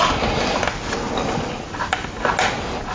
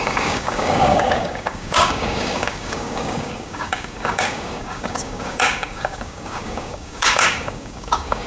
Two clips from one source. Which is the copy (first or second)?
second